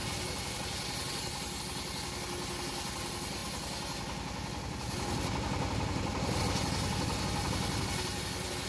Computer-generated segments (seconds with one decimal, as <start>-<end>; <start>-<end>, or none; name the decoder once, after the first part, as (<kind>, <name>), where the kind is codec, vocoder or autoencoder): none